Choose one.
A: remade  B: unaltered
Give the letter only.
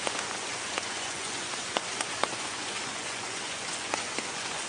A